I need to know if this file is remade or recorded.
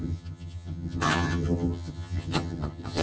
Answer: remade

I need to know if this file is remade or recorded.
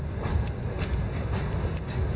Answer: recorded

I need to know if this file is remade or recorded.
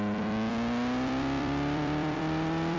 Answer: remade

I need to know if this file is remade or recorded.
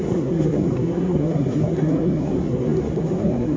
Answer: remade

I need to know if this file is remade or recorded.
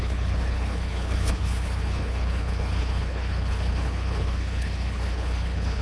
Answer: remade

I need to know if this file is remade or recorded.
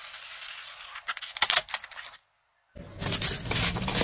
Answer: recorded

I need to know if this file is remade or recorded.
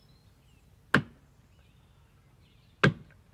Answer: recorded